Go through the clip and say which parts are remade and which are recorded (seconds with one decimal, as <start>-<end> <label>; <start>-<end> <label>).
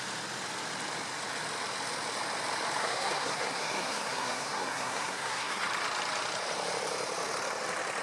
0.0-2.8 recorded; 2.8-5.6 remade; 5.6-8.0 recorded